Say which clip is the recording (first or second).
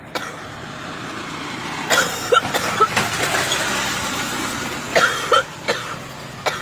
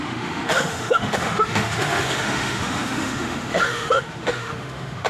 first